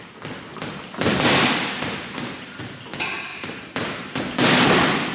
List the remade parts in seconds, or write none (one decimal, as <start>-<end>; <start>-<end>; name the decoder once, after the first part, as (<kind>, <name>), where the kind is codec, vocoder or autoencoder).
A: 0.5-2.6 (vocoder, BigVGAN v2); 3.3-4.2

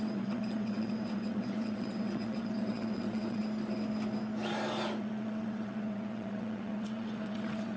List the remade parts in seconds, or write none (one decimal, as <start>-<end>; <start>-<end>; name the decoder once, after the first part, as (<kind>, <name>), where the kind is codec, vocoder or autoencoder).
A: 0.0-3.4 (vocoder, WaveNeXt); 5.0-7.8